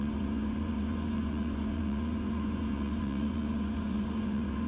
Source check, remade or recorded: remade